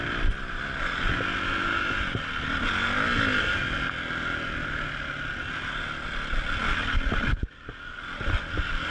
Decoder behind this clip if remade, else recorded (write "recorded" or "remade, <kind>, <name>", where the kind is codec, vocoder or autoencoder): recorded